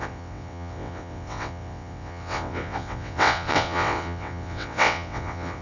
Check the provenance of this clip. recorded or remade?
remade